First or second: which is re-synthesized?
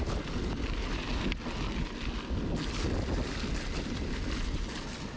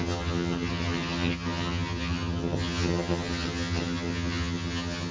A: second